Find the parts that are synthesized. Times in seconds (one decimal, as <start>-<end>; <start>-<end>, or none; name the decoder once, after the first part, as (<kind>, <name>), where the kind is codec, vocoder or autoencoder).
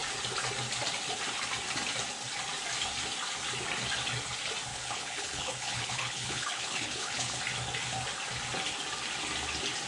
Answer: 4.7-7.4 (codec, HILCodec)